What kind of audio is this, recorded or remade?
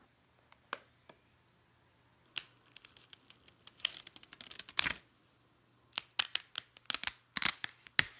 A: recorded